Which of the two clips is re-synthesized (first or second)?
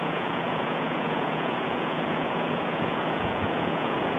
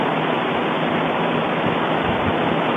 first